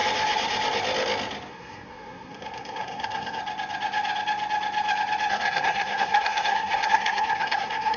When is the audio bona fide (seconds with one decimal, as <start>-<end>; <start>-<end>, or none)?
0.0-1.5; 3.4-5.3